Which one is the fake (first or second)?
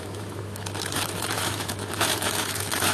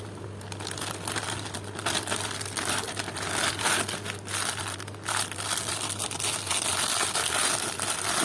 first